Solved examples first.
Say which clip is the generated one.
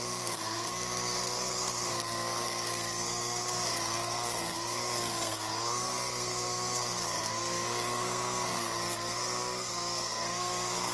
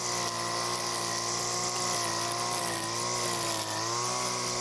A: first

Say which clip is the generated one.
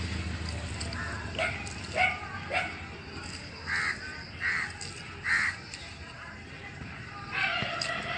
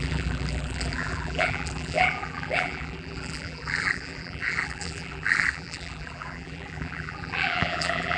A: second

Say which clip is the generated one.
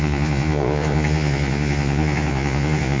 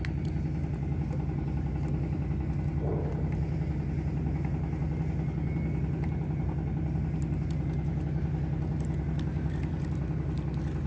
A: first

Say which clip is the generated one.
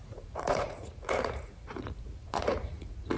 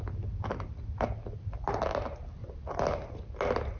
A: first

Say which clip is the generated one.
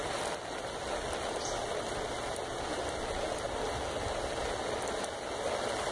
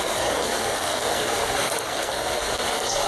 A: second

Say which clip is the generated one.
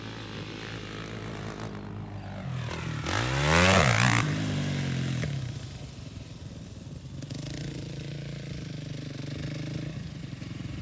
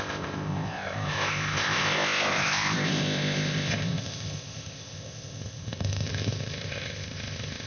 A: second